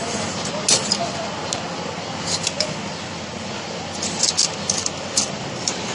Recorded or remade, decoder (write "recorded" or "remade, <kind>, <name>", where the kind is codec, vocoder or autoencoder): recorded